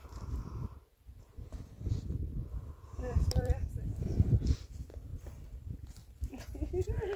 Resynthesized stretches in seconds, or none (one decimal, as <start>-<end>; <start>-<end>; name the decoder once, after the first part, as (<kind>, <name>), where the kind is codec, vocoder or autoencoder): 0.0-4.3 (vocoder, BigVGAN v2)